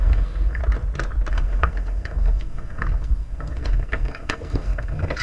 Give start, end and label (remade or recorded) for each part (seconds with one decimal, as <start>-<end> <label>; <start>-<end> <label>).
0.0-0.6 remade; 0.6-1.3 recorded; 1.3-5.2 remade